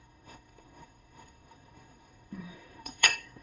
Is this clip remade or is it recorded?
remade